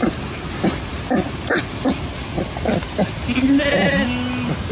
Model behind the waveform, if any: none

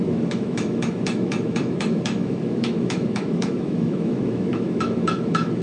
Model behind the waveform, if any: autoencoder, DAC-VAE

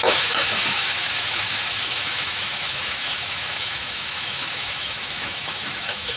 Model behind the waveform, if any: autoencoder, DAC-VAE